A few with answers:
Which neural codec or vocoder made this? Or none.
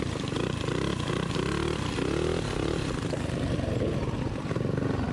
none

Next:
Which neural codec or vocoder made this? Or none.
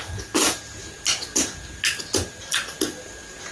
none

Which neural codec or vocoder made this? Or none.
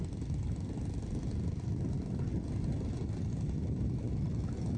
none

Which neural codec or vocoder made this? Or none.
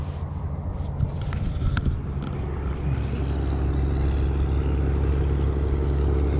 none